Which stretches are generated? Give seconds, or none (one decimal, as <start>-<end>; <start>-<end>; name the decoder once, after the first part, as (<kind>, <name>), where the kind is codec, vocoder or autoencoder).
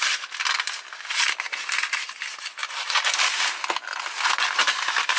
none